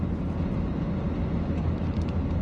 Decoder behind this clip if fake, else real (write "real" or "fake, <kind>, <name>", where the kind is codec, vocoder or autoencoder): real